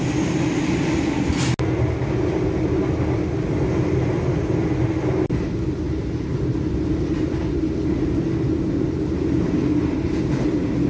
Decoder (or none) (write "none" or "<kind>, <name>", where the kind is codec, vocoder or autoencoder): none